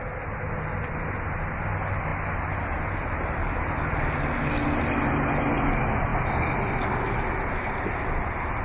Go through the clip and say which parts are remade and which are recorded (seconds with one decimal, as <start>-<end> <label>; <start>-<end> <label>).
0.0-8.6 recorded